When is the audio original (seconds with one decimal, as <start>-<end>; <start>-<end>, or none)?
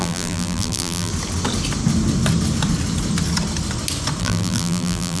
1.1-4.2